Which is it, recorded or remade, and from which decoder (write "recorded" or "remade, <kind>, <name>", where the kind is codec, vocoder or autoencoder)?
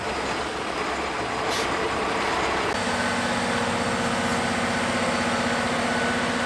recorded